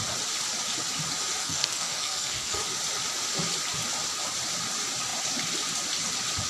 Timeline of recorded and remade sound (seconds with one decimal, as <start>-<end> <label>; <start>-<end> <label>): 0.0-1.4 recorded; 1.4-2.6 remade; 2.6-6.5 recorded